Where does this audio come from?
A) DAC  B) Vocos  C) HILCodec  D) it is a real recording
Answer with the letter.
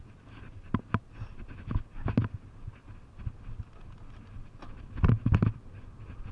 D